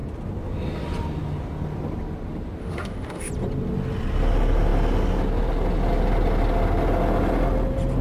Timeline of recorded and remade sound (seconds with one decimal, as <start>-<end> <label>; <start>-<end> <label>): 0.0-2.6 recorded; 2.6-3.3 remade; 3.3-8.0 recorded